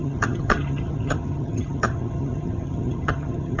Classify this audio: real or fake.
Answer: fake